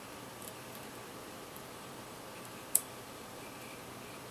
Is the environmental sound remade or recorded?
remade